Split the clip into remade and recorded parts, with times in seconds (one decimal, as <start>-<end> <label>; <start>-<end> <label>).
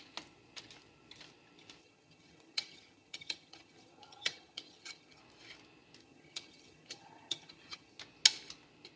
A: 0.0-1.8 recorded; 1.8-5.2 remade; 5.2-6.0 recorded; 6.0-8.0 remade; 8.0-9.0 recorded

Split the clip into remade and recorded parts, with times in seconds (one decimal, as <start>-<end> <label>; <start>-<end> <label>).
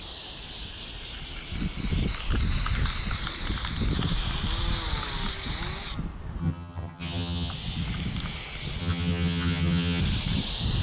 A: 0.0-6.4 recorded; 6.4-7.5 remade; 7.5-8.8 recorded; 8.8-10.0 remade; 10.0-10.8 recorded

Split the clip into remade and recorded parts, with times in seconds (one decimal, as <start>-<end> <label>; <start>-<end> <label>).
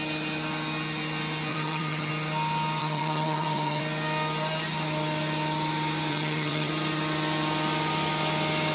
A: 0.0-1.5 recorded; 1.5-2.1 remade; 2.1-2.8 recorded; 2.8-3.8 remade; 3.8-6.1 recorded; 6.1-6.7 remade; 6.7-8.7 recorded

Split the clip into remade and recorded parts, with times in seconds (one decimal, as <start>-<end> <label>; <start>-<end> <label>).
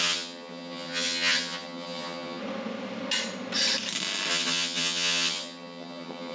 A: 0.0-2.4 remade; 2.4-4.3 recorded; 4.3-6.3 remade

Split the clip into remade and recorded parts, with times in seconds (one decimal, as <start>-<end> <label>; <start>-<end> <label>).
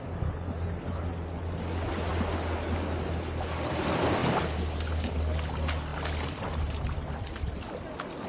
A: 0.0-8.3 recorded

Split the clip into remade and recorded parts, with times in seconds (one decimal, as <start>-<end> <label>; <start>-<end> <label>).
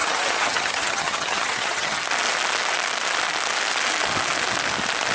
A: 0.0-2.0 remade; 2.0-5.1 recorded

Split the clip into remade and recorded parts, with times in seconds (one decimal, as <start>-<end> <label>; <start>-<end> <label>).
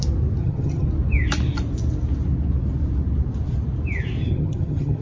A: 0.0-0.4 recorded; 0.4-0.9 remade; 0.9-4.2 recorded; 4.2-5.0 remade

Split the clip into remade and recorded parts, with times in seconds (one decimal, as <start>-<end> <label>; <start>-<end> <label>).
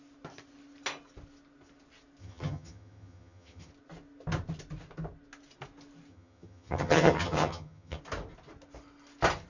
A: 0.0-2.2 recorded; 2.2-3.7 remade; 3.7-6.1 recorded; 6.1-8.0 remade; 8.0-9.5 recorded